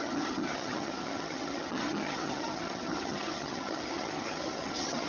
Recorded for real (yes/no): no